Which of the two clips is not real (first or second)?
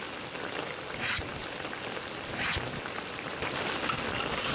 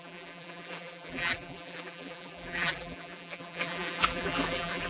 second